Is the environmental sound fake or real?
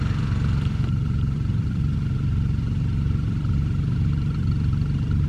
fake